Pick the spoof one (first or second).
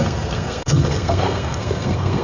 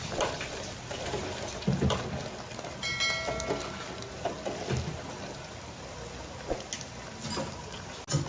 first